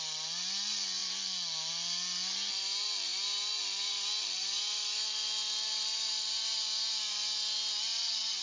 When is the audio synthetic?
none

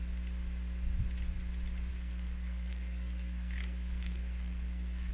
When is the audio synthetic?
1.9-5.1

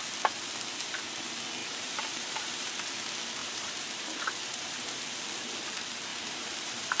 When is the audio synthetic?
1.6-2.8; 3.4-5.0; 6.1-7.0